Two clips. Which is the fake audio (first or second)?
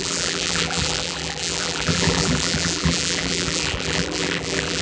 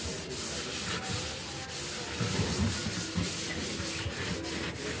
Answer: first